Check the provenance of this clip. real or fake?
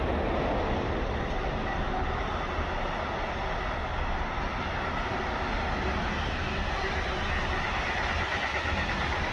real